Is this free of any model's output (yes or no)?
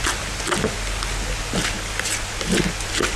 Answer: yes